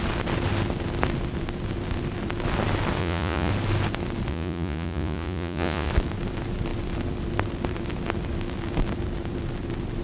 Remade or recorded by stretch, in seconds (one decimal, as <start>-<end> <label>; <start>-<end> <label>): 0.0-3.0 recorded; 3.0-3.5 remade; 3.5-4.3 recorded; 4.3-5.9 remade; 5.9-10.0 recorded